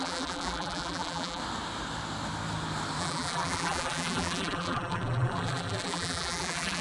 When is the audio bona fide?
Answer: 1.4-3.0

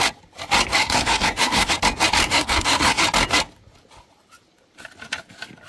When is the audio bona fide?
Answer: 0.0-0.8; 1.7-2.3; 3.0-5.7

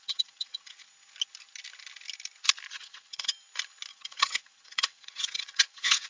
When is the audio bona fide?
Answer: 0.9-2.7; 3.3-3.9